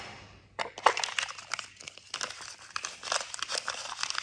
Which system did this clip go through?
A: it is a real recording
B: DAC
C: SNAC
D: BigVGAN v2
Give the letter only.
A